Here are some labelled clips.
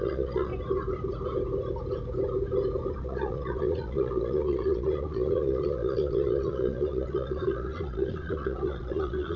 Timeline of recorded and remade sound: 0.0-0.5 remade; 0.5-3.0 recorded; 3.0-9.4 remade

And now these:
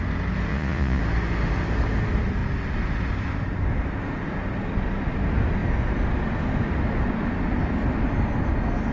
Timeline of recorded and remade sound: 0.0-0.5 recorded; 0.5-1.0 remade; 1.0-8.9 recorded

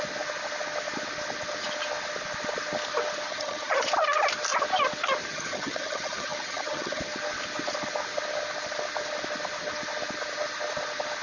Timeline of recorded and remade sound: 0.0-3.3 recorded; 3.3-3.9 remade; 3.9-5.3 recorded; 5.3-7.0 remade; 7.0-11.2 recorded

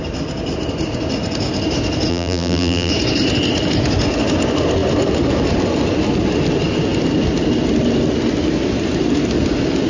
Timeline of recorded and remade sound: 0.0-2.1 recorded; 2.1-2.9 remade; 2.9-9.9 recorded

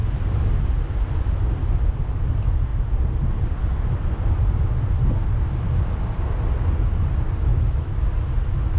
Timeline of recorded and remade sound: 0.0-7.5 recorded; 7.5-8.0 remade; 8.0-8.8 recorded

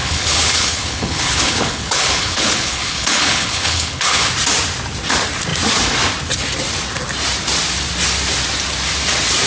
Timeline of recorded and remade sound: 0.0-4.3 remade; 4.3-9.5 recorded

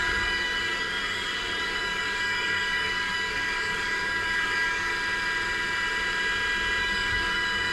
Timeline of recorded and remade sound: 0.0-4.9 remade; 4.9-6.8 recorded; 6.8-7.7 remade